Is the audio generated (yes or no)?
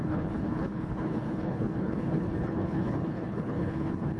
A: yes